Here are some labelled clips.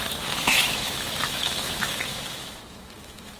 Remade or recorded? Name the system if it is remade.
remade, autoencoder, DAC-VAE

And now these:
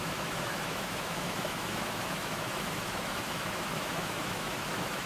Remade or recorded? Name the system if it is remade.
remade, autoencoder, DAC-VAE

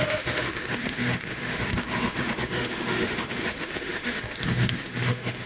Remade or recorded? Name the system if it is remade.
remade, autoencoder, DAC-VAE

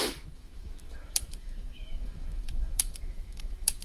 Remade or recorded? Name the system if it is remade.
remade, autoencoder, DAC-VAE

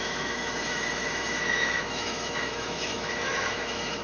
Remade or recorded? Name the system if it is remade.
remade, autoencoder, DAC-VAE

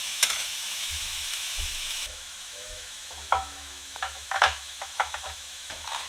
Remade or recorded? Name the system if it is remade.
remade, autoencoder, DAC-VAE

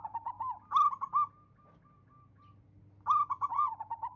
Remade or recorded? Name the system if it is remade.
recorded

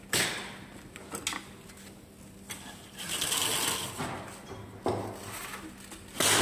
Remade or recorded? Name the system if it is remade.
recorded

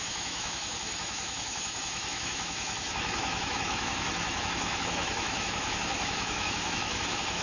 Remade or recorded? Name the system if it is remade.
remade, autoencoder, DAC-VAE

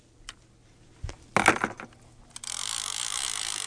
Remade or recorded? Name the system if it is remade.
recorded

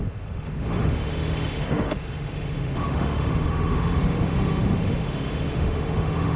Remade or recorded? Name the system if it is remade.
remade, autoencoder, DAC-VAE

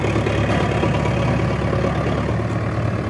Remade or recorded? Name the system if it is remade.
recorded